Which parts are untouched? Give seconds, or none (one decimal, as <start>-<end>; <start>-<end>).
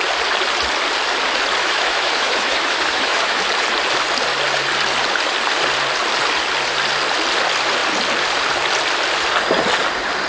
0.0-1.6; 3.4-10.3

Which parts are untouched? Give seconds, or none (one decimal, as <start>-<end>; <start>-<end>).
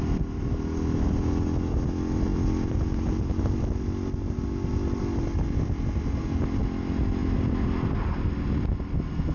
0.0-9.3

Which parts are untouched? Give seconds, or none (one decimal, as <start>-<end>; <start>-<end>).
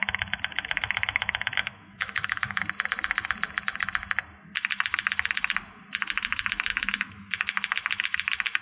0.0-1.6; 2.6-6.7; 7.3-8.6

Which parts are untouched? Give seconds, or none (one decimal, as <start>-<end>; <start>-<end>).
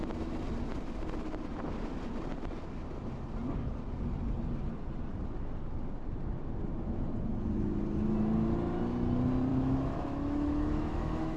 0.0-9.5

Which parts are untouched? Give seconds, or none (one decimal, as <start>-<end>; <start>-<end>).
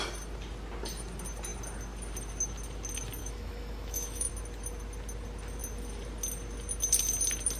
0.0-3.2; 4.3-7.6